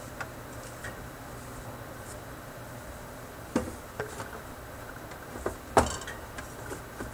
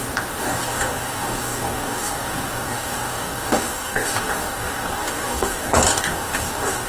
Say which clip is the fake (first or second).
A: second